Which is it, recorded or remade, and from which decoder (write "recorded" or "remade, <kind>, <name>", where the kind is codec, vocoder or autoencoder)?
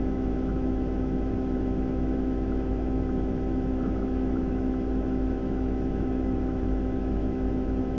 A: remade, autoencoder, DAC-VAE